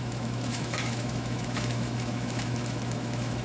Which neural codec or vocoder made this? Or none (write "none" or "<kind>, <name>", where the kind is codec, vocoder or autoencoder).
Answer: autoencoder, DAC-VAE